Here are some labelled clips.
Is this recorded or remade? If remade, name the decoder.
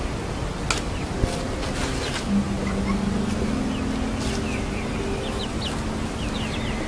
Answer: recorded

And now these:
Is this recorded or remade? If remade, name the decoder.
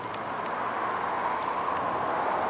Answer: recorded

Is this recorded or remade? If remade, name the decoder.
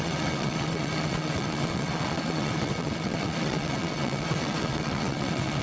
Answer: remade, vocoder, WaveNeXt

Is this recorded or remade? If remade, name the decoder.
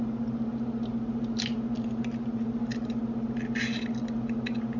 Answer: recorded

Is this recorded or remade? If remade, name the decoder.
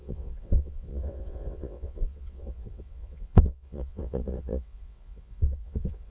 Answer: remade, vocoder, WaveNeXt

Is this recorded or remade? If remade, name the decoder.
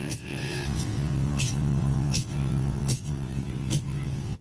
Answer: remade, vocoder, WaveNeXt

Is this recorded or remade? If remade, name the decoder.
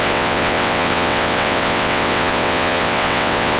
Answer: remade, vocoder, WaveNeXt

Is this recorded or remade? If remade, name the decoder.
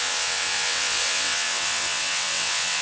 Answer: remade, vocoder, WaveNeXt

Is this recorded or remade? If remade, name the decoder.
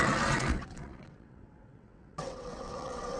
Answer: remade, vocoder, WaveNeXt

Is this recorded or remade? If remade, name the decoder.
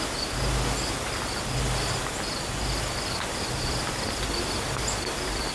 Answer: recorded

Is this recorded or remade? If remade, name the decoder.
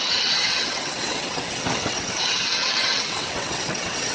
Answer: remade, vocoder, WaveNeXt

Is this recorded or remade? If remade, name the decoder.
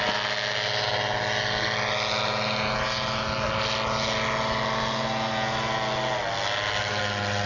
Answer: recorded